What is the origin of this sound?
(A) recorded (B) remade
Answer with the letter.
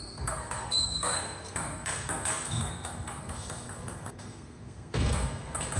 B